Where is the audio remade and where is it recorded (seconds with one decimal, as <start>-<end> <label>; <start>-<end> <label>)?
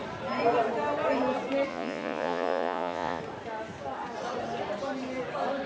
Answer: 0.0-1.7 recorded; 1.7-3.2 remade; 3.2-5.7 recorded